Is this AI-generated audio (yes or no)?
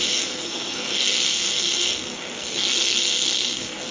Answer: yes